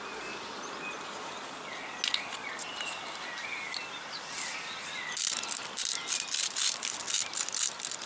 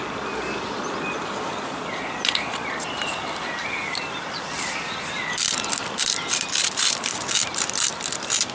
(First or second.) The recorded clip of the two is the first